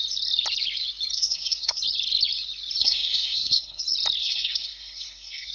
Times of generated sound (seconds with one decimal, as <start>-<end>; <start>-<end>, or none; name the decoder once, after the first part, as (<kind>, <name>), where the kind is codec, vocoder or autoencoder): 1.1-1.8 (codec, SNAC); 2.8-3.8; 4.2-5.5